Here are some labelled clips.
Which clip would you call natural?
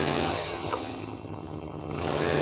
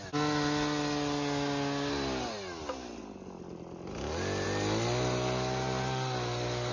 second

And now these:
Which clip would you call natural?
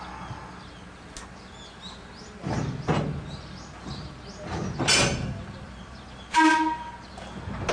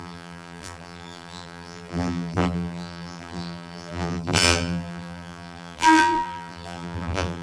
first